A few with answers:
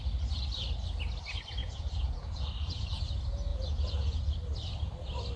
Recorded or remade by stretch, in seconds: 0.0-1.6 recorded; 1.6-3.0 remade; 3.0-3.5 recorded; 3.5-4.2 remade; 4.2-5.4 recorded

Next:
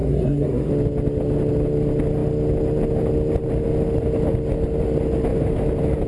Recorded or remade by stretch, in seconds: 0.0-0.7 remade; 0.7-6.1 recorded

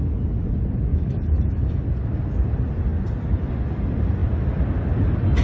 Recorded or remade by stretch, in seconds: 0.0-0.9 recorded; 0.9-1.8 remade; 1.8-5.4 recorded